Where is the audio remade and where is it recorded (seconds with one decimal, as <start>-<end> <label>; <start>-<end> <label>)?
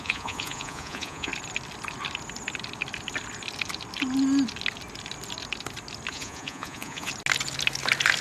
0.0-1.3 remade; 1.3-6.1 recorded; 6.1-7.1 remade; 7.1-8.2 recorded